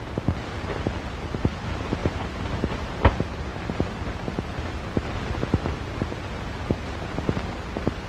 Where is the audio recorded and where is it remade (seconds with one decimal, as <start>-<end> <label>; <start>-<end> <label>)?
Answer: 0.0-2.0 recorded; 2.0-2.9 remade; 2.9-8.1 recorded